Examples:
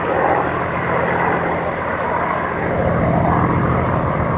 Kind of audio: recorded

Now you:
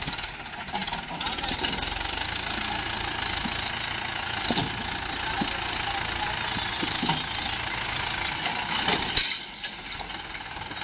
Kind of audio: recorded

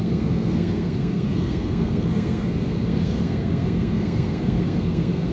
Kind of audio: remade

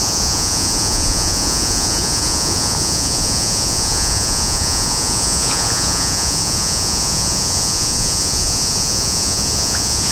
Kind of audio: remade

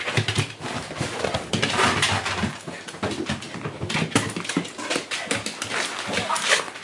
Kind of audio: recorded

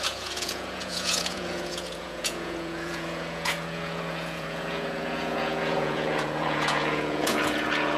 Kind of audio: remade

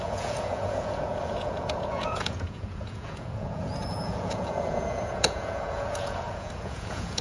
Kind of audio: remade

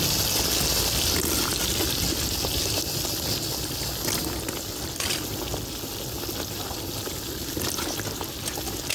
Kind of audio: recorded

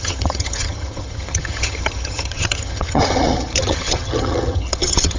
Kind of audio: remade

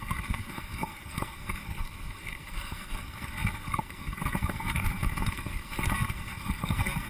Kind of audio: remade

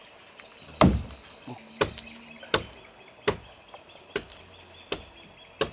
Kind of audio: recorded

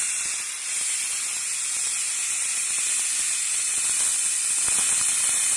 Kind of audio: recorded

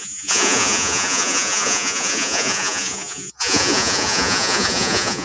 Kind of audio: remade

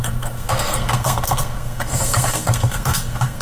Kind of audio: remade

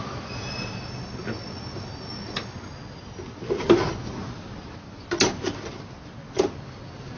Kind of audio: recorded